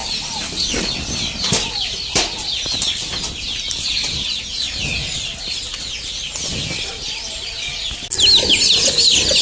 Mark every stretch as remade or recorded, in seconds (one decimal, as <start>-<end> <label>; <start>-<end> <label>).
0.0-9.4 recorded

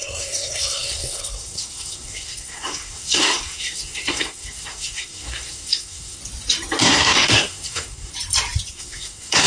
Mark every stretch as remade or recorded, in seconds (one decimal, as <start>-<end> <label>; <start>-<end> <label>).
0.0-6.2 remade; 6.2-6.8 recorded; 6.8-8.1 remade; 8.1-8.7 recorded; 8.7-9.5 remade